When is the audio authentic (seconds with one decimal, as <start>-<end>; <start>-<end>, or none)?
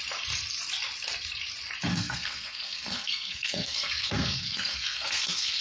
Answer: 0.0-1.9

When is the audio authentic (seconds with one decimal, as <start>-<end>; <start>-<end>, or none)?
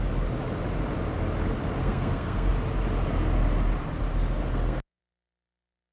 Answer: 0.0-1.8; 2.5-4.5; 5.0-5.9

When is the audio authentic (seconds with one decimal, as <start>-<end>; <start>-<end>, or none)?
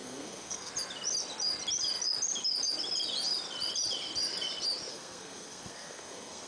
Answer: 0.7-4.9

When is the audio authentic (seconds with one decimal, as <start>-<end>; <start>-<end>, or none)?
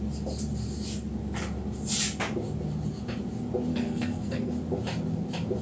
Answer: 0.0-3.7; 4.5-5.6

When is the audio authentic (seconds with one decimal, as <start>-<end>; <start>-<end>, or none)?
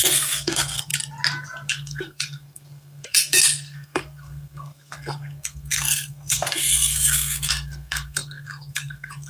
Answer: 0.9-1.7